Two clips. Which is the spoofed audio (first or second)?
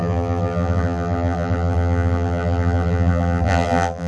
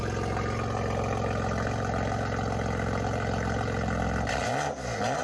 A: first